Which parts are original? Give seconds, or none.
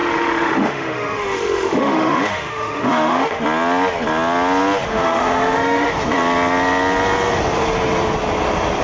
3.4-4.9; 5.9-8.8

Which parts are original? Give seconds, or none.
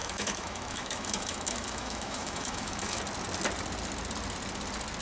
3.0-5.0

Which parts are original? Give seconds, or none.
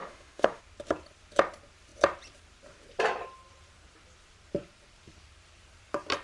0.6-6.2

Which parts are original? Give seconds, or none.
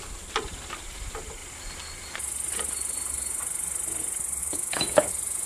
0.0-4.4; 5.1-5.5